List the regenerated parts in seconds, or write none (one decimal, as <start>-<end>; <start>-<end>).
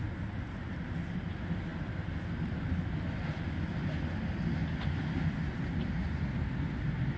none